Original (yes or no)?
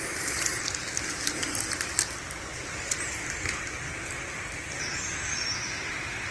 yes